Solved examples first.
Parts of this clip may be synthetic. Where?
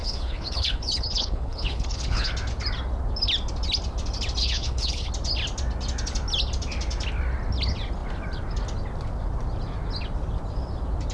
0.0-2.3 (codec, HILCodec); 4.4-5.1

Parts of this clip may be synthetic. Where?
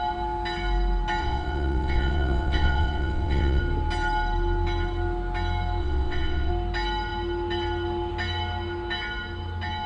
1.2-3.6 (vocoder, WaveNeXt); 5.8-6.5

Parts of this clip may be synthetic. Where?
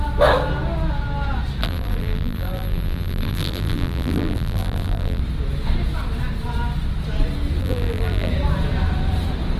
1.6-5.2 (vocoder, BigVGAN v2); 7.6-8.3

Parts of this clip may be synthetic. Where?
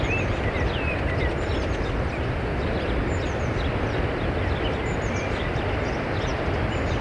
0.0-1.5 (vocoder, BigVGAN v2); 3.7-7.0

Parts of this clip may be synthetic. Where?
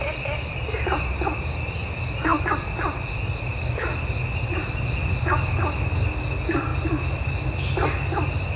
none